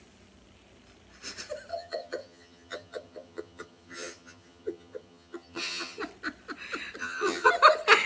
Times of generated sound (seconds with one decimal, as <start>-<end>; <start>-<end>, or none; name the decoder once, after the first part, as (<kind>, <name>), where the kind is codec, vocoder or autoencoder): 1.7-6.0 (vocoder, HiFi-GAN); 7.0-7.5